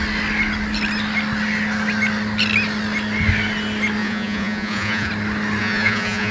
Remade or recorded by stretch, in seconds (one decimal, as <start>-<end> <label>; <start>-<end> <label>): 0.0-4.0 recorded; 4.0-5.1 remade; 5.1-5.6 recorded; 5.6-6.3 remade